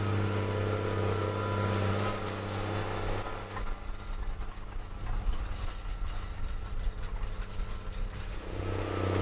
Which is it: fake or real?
real